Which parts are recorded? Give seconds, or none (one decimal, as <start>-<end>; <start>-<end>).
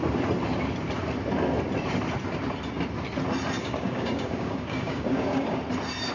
0.0-3.6; 5.6-6.1